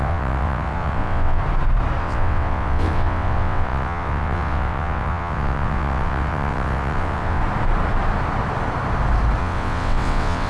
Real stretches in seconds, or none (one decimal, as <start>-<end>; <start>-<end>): 1.4-2.0; 7.4-9.4